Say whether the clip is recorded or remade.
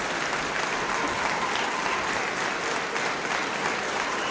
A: recorded